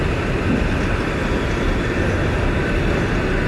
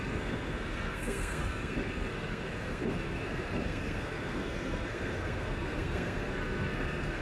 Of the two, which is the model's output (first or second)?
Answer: second